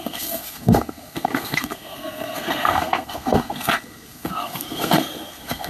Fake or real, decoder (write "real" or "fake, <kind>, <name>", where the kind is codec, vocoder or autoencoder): fake, codec, SNAC